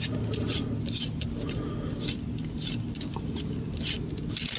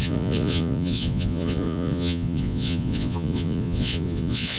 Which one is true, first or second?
first